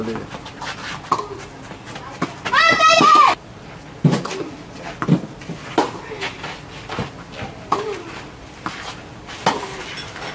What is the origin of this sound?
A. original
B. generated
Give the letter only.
A